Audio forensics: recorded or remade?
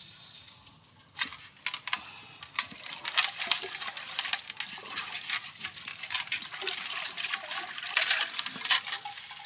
recorded